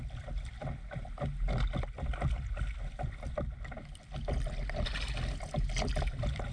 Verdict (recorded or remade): recorded